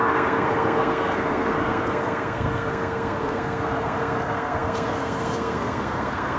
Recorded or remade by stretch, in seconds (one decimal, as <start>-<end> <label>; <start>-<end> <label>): 0.0-6.4 remade